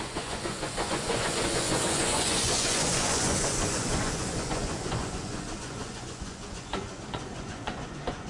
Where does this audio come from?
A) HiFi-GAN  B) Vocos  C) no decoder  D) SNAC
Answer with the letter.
B